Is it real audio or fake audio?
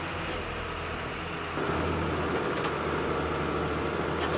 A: real